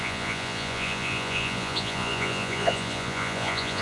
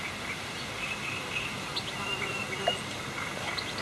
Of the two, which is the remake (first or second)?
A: first